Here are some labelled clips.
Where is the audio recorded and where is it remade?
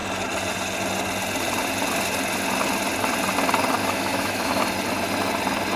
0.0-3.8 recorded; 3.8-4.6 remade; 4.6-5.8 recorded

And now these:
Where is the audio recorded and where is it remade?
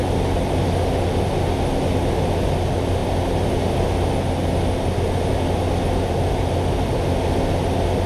0.0-8.1 recorded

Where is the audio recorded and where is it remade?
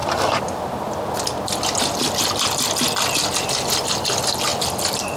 0.0-4.5 recorded; 4.5-5.2 remade